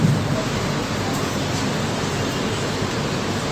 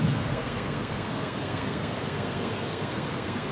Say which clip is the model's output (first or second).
second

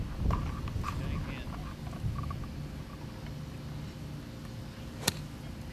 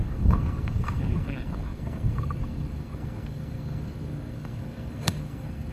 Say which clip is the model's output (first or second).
second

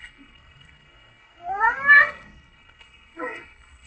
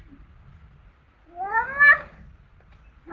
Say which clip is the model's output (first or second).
first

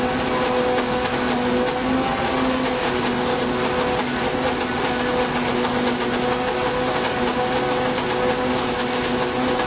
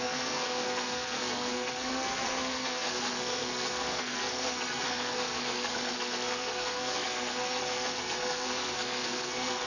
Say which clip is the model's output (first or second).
second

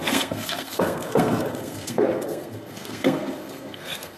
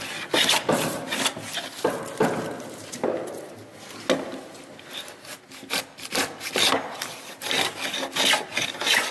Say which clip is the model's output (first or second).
first